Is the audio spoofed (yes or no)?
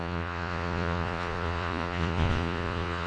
yes